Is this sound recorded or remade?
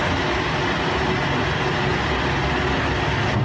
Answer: recorded